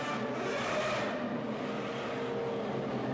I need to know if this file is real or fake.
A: real